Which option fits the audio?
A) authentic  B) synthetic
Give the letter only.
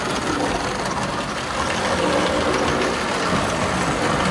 A